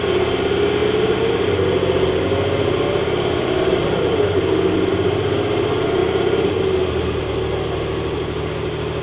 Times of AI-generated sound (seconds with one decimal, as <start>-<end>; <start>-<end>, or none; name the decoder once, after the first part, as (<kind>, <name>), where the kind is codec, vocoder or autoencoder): none